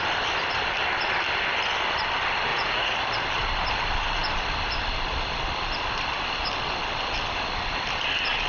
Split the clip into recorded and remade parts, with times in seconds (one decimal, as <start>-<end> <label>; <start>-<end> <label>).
0.0-2.5 recorded; 2.5-3.0 remade; 3.0-8.5 recorded